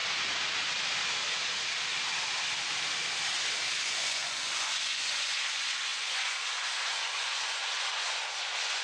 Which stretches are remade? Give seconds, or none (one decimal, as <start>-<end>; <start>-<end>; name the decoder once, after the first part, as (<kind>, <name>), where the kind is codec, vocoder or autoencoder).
3.7-8.8 (vocoder, Vocos)